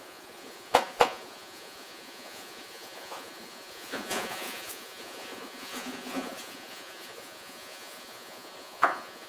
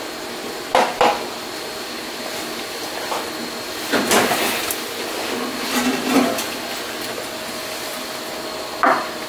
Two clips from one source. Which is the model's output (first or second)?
first